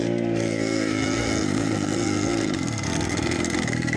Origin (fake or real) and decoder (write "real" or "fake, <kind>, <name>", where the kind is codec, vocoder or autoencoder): fake, codec, SNAC